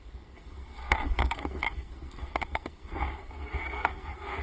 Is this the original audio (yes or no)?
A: no